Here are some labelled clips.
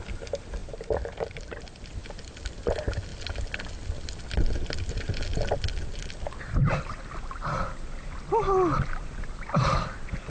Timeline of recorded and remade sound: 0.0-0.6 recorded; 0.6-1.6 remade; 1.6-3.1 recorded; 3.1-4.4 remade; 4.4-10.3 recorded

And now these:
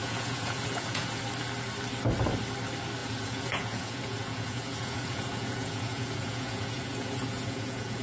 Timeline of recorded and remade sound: 0.0-1.2 remade; 1.2-3.0 recorded; 3.0-8.0 remade

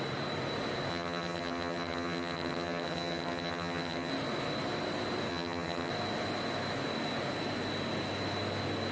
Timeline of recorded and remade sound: 0.0-0.9 recorded; 0.9-4.1 remade; 4.1-5.3 recorded; 5.3-5.9 remade; 5.9-8.9 recorded

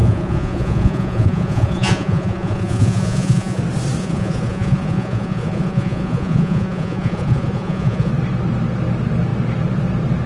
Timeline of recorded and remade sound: 0.0-3.6 remade; 3.6-4.0 recorded; 4.0-8.1 remade; 8.1-10.3 recorded

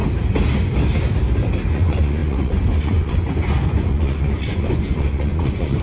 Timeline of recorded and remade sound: 0.0-1.7 recorded; 1.7-5.8 remade

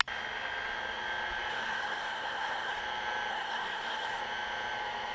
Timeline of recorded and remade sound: 0.0-1.5 recorded; 1.5-2.8 remade; 2.8-3.3 recorded; 3.3-4.2 remade; 4.2-5.1 recorded

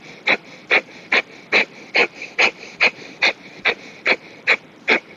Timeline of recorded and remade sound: 0.0-0.6 recorded; 0.6-1.2 remade; 1.2-2.0 recorded; 2.0-5.2 remade

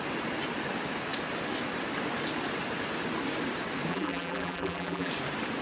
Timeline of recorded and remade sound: 0.0-3.9 recorded; 3.9-5.1 remade; 5.1-5.6 recorded